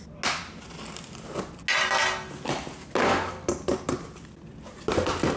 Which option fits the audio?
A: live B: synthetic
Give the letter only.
A